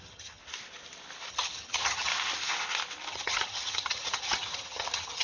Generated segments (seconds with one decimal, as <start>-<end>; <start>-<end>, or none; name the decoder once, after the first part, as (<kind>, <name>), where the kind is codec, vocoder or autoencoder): 0.0-0.4 (vocoder, HiFi-GAN); 1.3-2.1; 3.1-5.2